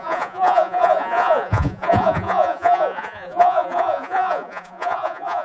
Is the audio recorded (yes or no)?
no